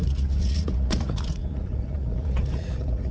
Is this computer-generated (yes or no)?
yes